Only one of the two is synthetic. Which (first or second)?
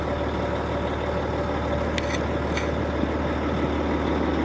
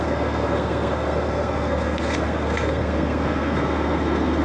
second